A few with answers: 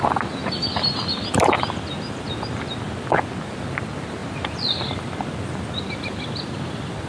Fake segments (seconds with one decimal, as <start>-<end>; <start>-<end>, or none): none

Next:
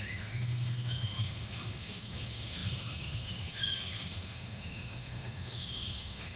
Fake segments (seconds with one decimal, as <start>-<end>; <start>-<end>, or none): 0.0-6.4

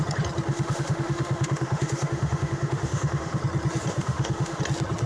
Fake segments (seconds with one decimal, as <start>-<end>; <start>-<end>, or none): 0.5-3.4; 3.9-4.6

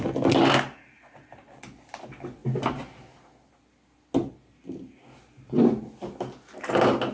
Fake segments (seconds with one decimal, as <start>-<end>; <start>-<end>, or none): none